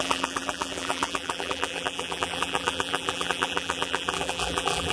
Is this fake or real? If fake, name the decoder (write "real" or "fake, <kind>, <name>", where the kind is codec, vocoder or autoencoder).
fake, vocoder, BigVGAN v2